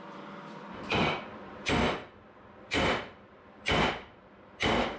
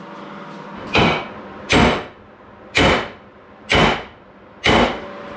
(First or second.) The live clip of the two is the second